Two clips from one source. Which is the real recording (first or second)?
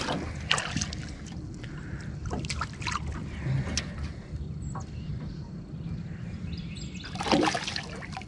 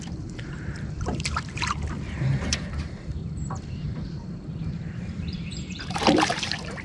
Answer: first